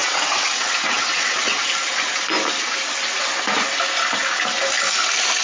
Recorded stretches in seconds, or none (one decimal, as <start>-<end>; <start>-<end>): 1.7-5.4